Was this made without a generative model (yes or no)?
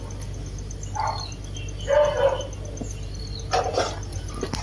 yes